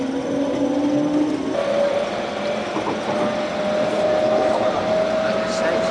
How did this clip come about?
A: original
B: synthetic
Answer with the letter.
A